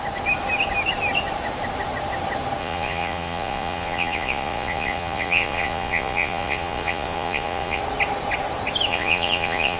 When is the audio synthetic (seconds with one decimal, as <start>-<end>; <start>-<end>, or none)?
2.6-7.8; 8.9-9.8